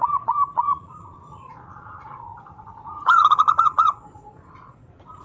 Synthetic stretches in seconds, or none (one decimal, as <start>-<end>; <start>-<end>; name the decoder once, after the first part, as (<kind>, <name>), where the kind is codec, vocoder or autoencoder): 0.0-5.2 (vocoder, Vocos)